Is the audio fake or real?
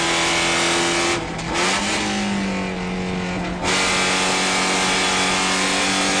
real